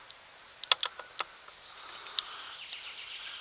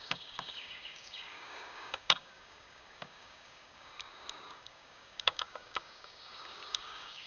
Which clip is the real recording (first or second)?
first